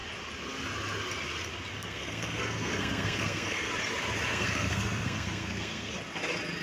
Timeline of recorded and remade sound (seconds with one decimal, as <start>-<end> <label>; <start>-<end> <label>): 0.0-1.7 recorded; 1.7-3.7 remade; 3.7-4.3 recorded; 4.3-5.9 remade; 5.9-6.6 recorded